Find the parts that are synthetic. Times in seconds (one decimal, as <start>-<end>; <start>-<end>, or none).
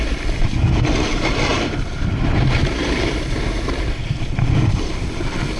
1.5-4.9